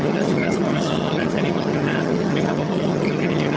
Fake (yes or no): yes